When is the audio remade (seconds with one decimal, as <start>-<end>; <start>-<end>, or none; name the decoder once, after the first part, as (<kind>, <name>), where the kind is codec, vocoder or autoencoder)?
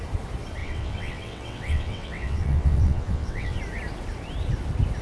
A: 0.6-3.6 (vocoder, WaveNeXt)